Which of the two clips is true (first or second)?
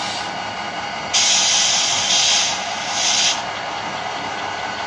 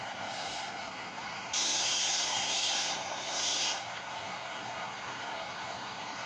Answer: first